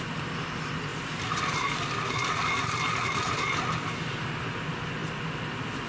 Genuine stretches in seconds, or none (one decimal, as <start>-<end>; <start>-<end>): 0.0-5.9